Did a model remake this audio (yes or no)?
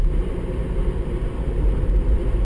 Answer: no